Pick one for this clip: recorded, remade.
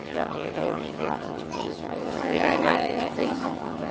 remade